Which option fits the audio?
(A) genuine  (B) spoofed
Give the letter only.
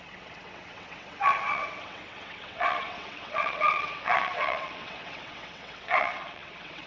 B